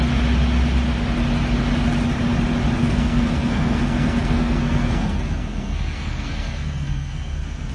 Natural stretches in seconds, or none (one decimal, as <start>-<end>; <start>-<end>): 0.0-2.8